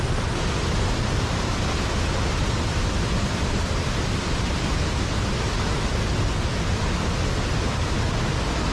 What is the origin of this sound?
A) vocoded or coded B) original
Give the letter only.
B